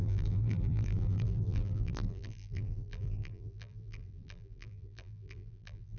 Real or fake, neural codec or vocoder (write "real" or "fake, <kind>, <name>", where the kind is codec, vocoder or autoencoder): fake, vocoder, BigVGAN v2